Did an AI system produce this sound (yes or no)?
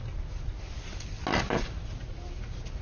no